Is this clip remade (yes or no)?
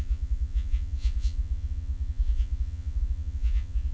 yes